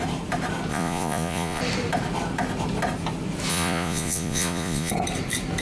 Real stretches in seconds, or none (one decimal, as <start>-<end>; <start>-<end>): 0.0-0.7; 1.6-3.5; 4.9-5.6